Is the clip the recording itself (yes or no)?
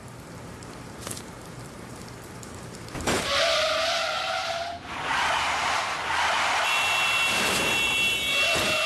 no